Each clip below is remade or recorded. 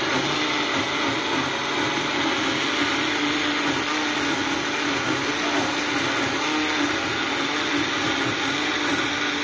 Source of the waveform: recorded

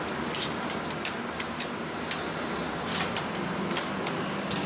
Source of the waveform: recorded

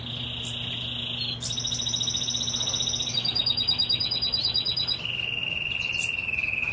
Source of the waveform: recorded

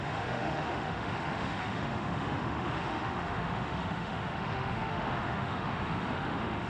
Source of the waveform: remade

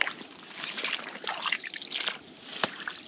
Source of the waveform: recorded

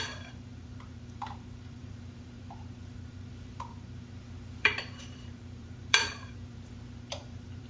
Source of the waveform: remade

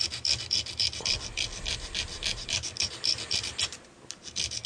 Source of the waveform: recorded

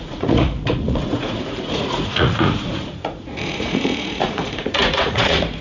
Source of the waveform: remade